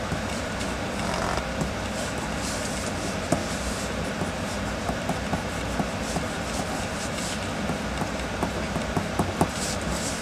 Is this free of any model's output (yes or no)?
yes